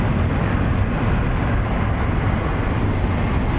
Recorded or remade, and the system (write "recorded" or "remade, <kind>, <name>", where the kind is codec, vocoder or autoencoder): recorded